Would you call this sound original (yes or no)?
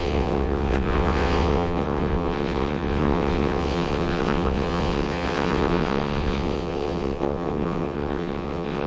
no